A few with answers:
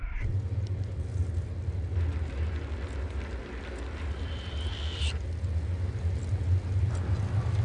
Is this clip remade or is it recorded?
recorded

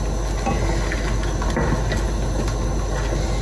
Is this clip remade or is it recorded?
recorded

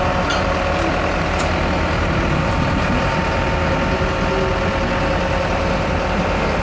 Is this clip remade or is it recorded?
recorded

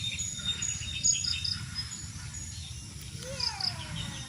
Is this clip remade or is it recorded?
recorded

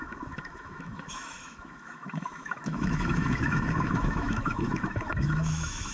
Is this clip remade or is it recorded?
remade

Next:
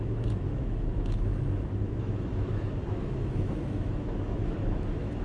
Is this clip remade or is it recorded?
remade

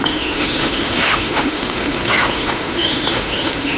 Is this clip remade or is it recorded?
remade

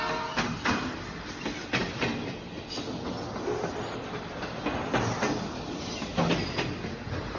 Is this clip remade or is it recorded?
recorded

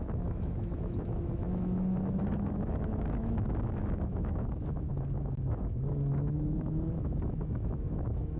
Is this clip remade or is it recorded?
remade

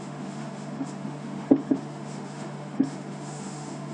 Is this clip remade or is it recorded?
remade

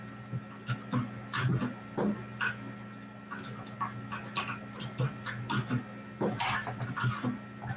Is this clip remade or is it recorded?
recorded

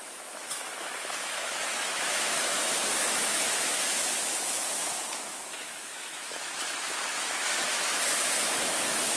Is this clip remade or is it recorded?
remade